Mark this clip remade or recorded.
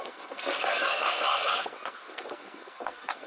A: remade